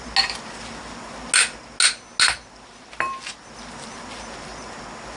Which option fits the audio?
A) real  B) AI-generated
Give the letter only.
A